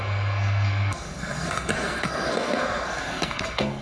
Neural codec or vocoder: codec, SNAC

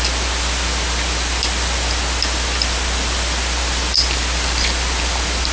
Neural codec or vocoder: none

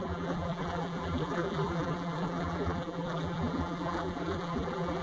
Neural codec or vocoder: vocoder, BigVGAN v2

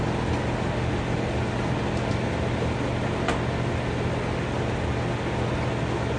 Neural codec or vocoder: none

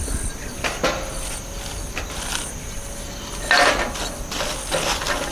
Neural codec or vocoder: none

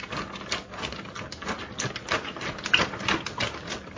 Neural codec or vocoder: none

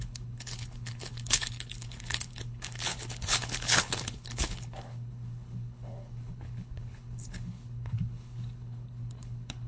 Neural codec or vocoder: codec, HILCodec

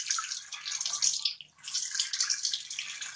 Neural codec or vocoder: none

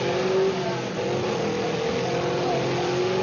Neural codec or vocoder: none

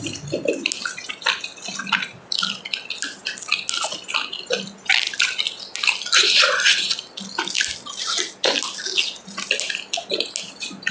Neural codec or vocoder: none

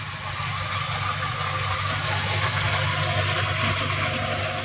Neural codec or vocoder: none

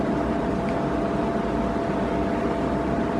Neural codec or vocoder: none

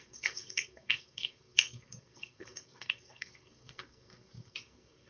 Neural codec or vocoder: codec, SNAC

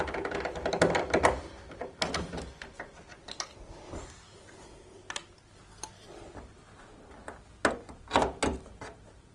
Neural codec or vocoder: none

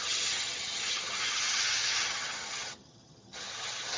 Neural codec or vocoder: vocoder, HiFi-GAN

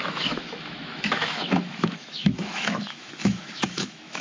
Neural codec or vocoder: autoencoder, DAC-VAE